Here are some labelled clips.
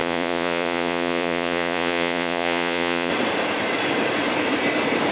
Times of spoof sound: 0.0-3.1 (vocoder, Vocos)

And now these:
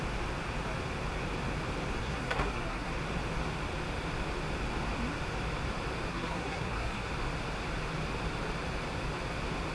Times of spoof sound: 2.0-2.9 (codec, SNAC); 6.1-7.1

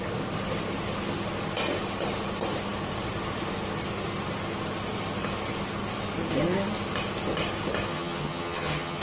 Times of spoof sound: 7.9-9.0 (vocoder, HiFi-GAN)